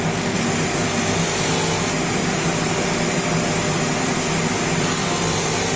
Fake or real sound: real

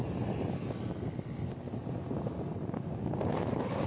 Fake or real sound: real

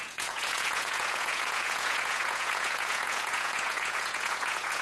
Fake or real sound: fake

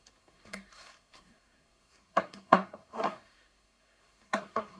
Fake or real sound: fake